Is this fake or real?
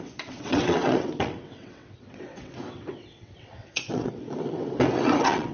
fake